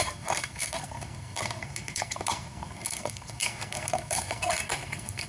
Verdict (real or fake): fake